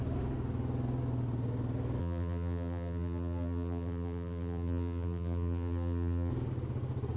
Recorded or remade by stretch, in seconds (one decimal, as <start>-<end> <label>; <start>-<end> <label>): 0.0-2.0 recorded; 2.0-6.3 remade; 6.3-7.2 recorded